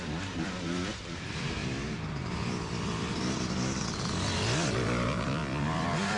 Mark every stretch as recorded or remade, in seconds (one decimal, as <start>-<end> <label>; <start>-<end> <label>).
0.0-6.2 remade